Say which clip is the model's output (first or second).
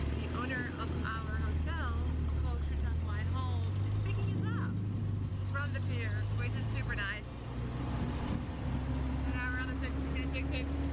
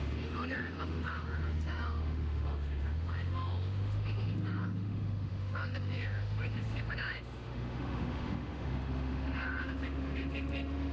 second